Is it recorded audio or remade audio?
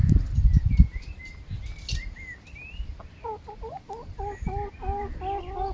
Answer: recorded